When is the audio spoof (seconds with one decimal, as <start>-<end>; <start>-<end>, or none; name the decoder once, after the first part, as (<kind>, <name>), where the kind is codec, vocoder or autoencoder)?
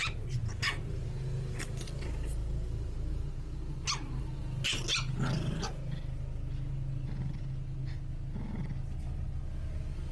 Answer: 0.4-1.1 (vocoder, BigVGAN v2)